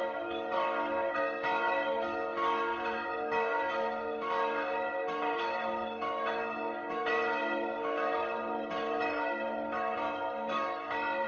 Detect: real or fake fake